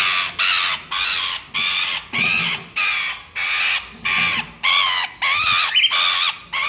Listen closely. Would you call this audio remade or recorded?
recorded